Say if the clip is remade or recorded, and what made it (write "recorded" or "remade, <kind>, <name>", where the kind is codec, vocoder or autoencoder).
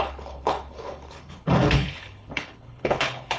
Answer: remade, codec, HILCodec